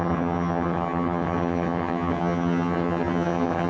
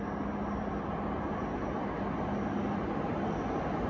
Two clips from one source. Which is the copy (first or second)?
first